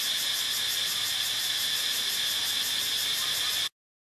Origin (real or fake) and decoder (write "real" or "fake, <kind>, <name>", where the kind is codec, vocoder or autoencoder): real